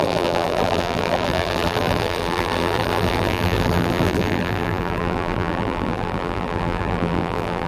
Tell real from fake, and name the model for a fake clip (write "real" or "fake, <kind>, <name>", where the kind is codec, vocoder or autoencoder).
fake, vocoder, BigVGAN v2